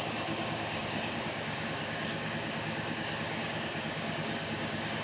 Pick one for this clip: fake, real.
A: fake